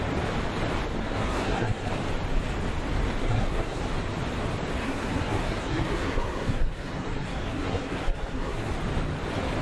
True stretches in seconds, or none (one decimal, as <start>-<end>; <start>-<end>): 0.0-1.0; 1.9-3.2; 3.8-4.8; 8.7-9.6